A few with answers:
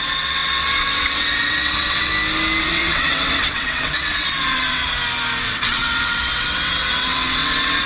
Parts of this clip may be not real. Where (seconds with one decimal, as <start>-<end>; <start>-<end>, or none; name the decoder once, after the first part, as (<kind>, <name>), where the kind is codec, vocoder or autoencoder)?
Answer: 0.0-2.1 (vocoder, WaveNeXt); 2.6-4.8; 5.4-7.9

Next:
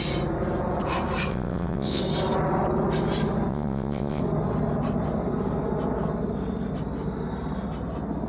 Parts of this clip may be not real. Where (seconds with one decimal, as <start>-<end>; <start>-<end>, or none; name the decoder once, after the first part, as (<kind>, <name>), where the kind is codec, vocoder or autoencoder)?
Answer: 1.3-2.0 (vocoder, WaveNeXt); 3.5-4.2

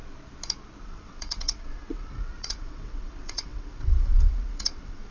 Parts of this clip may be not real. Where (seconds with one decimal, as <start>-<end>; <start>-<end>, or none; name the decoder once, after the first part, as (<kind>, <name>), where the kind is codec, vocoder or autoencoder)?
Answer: 0.8-5.1 (vocoder, WaveNeXt)